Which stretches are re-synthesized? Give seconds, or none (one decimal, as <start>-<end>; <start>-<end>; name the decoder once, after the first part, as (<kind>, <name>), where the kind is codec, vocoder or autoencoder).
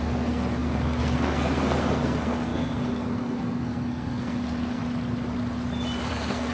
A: 0.0-4.8 (codec, SNAC); 6.1-6.5